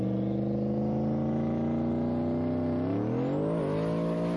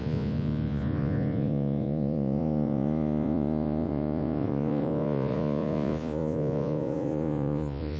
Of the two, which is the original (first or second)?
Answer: first